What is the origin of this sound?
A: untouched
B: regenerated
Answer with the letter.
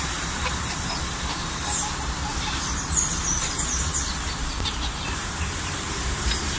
B